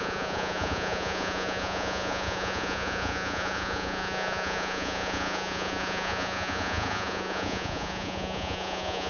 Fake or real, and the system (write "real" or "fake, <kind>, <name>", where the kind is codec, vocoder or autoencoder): fake, vocoder, Vocos